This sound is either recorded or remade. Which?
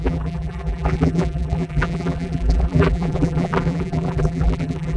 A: remade